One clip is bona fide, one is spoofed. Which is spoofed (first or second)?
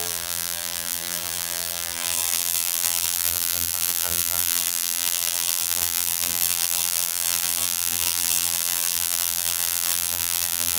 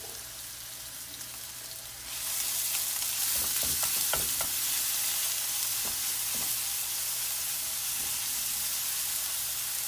first